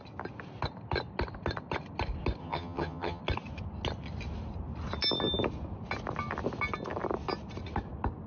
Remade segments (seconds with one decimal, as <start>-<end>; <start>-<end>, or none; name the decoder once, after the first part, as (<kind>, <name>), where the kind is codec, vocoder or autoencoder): 2.4-3.2 (vocoder, HiFi-GAN)